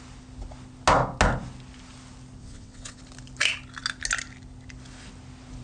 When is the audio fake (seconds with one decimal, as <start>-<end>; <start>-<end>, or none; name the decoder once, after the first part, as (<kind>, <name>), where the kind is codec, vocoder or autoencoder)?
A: 2.4-3.0 (vocoder, WaveNeXt)